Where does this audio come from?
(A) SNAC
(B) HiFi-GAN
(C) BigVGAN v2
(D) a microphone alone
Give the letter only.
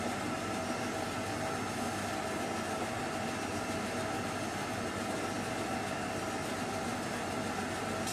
D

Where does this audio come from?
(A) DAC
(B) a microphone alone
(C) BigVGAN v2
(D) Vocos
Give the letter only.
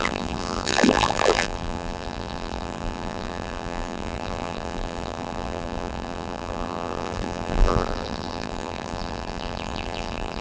C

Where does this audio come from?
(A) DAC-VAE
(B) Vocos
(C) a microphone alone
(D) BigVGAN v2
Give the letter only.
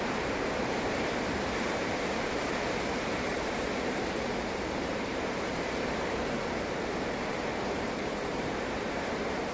D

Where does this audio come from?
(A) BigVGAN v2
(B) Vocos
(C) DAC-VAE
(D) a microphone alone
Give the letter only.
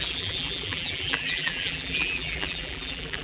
A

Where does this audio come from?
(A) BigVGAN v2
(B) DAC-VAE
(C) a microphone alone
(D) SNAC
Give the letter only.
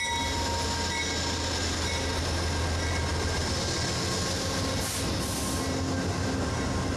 C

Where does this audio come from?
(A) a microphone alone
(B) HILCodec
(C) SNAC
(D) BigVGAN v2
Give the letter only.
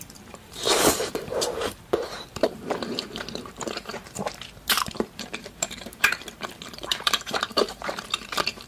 D